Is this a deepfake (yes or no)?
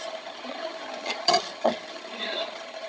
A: yes